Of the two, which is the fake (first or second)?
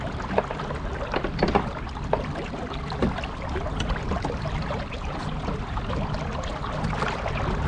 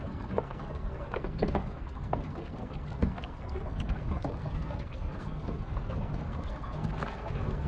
second